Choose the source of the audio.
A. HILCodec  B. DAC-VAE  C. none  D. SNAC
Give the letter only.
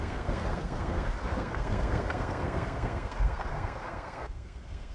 D